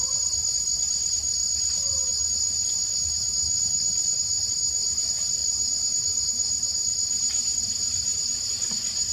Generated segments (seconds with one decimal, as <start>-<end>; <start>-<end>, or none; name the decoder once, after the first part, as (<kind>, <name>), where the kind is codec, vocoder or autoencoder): none